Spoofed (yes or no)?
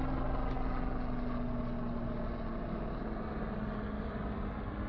no